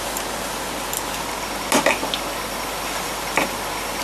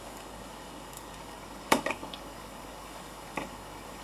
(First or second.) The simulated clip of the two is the second